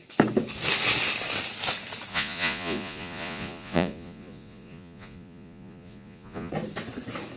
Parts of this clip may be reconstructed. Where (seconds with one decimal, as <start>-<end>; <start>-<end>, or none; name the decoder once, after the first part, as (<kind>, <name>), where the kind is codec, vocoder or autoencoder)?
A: 2.1-6.5 (vocoder, Vocos)